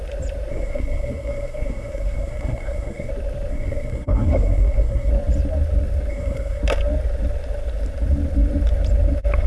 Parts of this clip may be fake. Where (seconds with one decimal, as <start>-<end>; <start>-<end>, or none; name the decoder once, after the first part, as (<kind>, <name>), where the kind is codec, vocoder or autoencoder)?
0.5-3.1 (codec, SNAC); 3.5-5.1; 6.1-6.6